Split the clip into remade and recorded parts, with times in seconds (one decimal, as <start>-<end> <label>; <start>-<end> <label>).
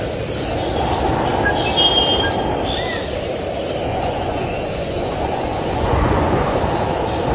0.0-3.9 recorded; 3.9-6.6 remade; 6.6-7.3 recorded